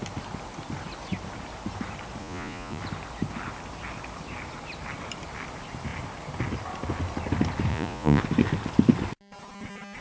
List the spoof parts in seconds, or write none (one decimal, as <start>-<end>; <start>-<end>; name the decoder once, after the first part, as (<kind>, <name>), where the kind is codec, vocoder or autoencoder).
2.2-2.8 (vocoder, Vocos); 7.7-8.2